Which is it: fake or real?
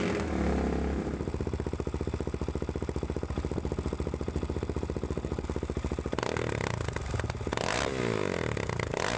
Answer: real